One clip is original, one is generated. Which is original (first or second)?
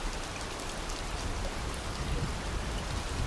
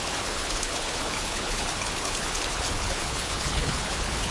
first